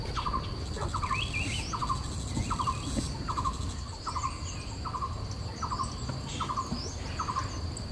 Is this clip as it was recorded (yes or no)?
yes